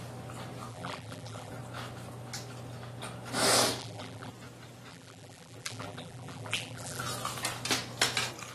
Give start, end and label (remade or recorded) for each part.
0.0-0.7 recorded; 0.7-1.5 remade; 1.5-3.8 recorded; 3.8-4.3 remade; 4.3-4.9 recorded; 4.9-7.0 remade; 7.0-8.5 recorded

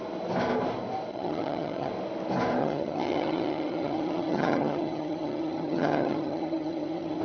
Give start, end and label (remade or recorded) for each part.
0.0-1.1 recorded; 1.1-1.9 remade; 1.9-2.6 recorded; 2.6-7.2 remade